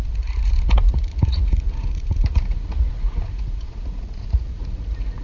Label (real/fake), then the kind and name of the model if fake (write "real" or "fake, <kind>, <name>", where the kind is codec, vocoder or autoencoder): fake, vocoder, Vocos